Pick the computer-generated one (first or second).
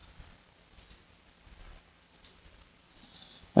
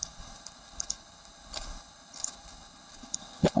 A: second